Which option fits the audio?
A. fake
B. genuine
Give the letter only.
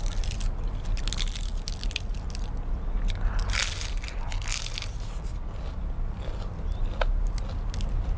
B